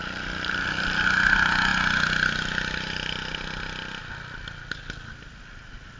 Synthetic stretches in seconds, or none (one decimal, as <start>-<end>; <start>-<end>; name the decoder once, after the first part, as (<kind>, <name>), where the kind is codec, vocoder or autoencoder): none